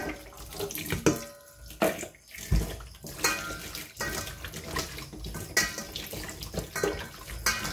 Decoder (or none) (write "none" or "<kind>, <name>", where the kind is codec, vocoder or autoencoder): none